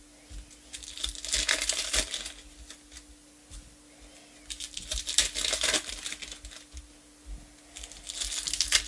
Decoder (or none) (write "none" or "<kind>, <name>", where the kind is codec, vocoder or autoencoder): none